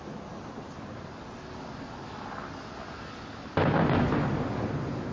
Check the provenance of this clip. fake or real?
real